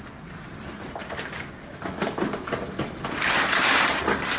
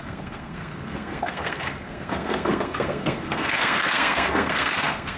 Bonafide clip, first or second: first